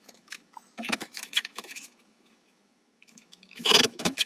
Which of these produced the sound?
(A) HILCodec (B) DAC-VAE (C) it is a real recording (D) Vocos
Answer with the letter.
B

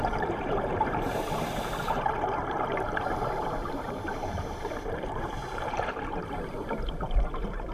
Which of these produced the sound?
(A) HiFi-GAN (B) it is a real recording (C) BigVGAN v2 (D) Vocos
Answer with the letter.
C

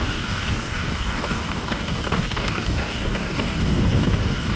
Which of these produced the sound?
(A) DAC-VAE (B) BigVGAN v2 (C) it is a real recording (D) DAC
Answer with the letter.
D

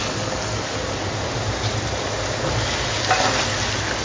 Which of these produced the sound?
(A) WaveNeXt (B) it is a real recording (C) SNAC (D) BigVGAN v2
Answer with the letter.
B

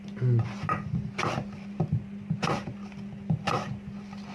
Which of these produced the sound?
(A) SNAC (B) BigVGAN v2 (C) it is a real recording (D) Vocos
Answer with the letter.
C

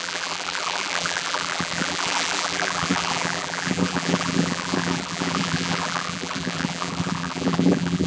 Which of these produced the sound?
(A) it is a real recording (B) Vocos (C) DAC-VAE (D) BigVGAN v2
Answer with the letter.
D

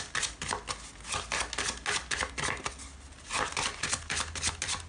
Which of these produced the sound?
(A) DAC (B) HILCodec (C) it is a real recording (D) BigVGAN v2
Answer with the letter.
C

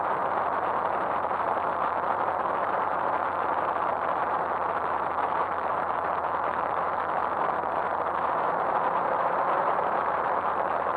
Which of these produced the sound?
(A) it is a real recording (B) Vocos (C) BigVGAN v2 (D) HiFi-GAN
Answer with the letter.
C